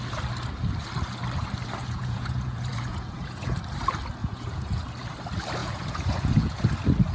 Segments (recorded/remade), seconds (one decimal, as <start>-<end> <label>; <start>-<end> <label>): 0.0-1.8 recorded; 1.8-3.6 remade; 3.6-4.2 recorded; 4.2-4.8 remade; 4.8-5.6 recorded; 5.6-6.6 remade; 6.6-7.1 recorded